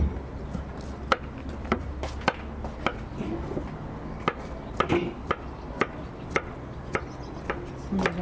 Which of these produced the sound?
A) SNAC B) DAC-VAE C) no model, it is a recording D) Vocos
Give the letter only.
C